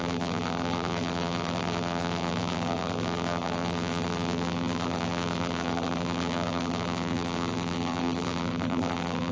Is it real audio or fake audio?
fake